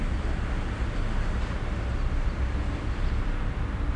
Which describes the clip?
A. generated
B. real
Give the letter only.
B